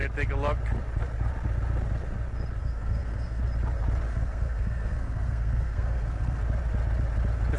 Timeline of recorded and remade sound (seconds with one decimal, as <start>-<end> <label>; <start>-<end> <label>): 0.0-2.6 recorded; 2.6-3.4 remade; 3.4-4.1 recorded; 4.1-6.4 remade; 6.4-7.6 recorded